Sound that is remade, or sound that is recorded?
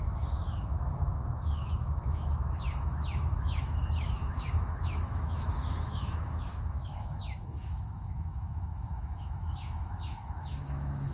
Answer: remade